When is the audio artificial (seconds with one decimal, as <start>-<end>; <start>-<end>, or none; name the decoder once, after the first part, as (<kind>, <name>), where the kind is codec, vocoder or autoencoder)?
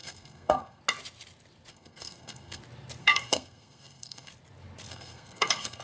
0.0-0.8 (codec, SNAC); 1.7-2.6; 3.0-4.3; 4.9-5.8